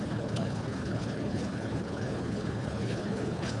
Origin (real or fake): fake